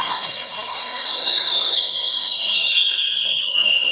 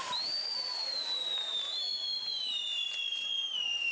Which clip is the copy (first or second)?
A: first